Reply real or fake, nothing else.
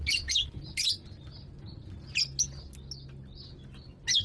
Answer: real